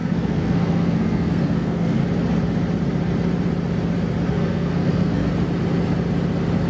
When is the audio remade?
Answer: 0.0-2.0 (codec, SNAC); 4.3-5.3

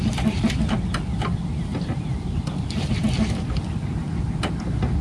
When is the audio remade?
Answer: none

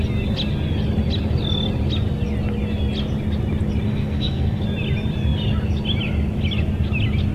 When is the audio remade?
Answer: 3.9-4.6 (codec, SNAC)

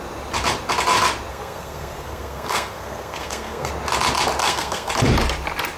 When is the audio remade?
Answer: 1.3-3.7 (codec, SNAC); 4.4-4.9

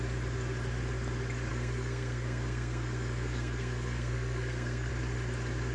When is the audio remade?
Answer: 1.5-4.9 (codec, SNAC)

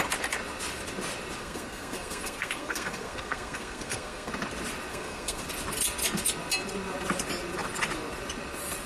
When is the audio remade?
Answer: 1.4-4.3 (codec, SNAC); 4.9-5.5

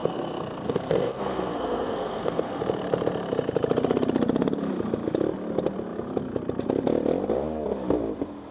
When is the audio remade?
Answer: 0.0-2.6 (codec, SNAC)

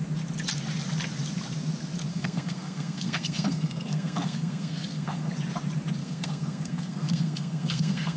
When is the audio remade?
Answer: 2.1-5.3 (codec, SNAC); 6.0-8.2